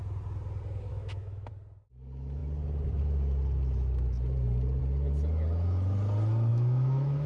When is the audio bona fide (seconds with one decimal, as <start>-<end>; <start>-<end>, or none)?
0.0-0.9; 1.5-6.5